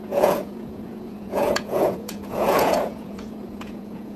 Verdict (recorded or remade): remade